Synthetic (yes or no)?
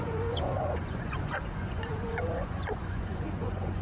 yes